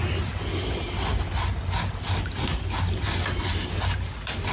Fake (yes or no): no